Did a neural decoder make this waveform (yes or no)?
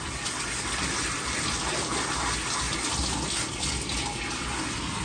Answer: no